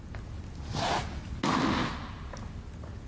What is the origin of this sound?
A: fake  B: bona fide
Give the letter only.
B